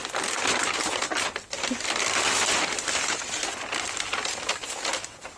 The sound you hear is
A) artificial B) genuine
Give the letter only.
B